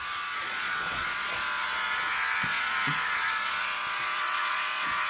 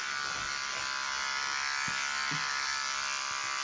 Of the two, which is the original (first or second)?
second